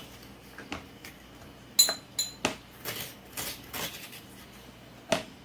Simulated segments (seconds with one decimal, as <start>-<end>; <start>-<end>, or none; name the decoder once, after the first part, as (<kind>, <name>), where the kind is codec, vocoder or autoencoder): none